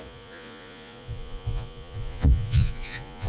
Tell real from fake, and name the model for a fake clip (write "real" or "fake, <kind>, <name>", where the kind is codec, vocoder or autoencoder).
fake, vocoder, Vocos